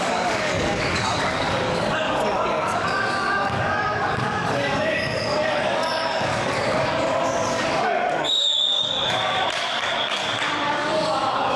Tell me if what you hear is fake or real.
fake